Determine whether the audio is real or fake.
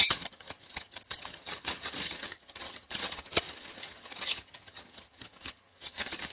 fake